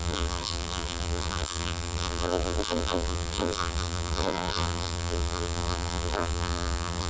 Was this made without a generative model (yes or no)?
no